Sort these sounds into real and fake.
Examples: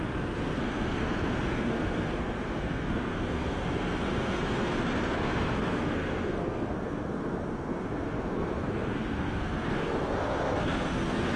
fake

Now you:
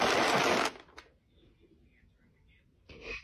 real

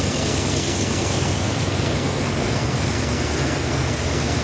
fake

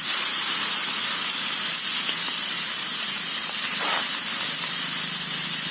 real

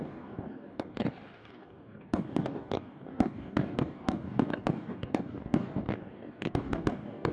fake